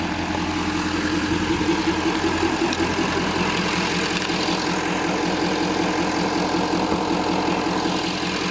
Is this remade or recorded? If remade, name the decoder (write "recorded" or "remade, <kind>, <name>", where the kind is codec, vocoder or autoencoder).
recorded